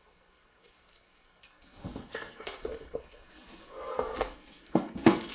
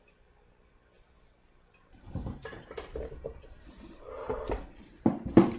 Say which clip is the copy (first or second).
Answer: first